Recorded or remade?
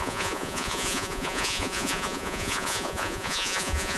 remade